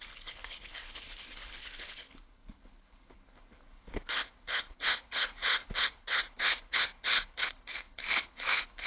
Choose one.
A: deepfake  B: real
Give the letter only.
A